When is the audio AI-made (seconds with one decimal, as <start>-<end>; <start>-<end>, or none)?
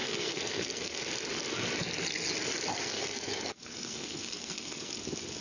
0.0-1.1; 2.7-4.9